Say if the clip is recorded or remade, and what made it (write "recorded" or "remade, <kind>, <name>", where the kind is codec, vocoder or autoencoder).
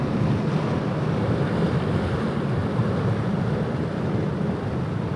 recorded